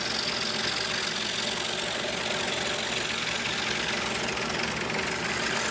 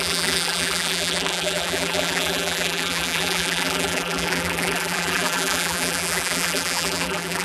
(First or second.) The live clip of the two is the first